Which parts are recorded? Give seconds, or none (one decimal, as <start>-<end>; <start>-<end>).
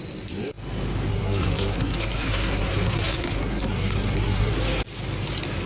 0.0-1.1; 4.5-5.7